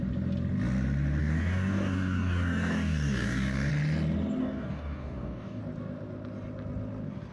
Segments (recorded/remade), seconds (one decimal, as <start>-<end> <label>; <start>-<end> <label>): 0.0-1.2 recorded; 1.2-3.7 remade; 3.7-4.4 recorded; 4.4-5.6 remade; 5.6-7.3 recorded